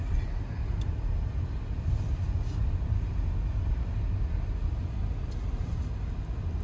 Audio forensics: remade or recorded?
recorded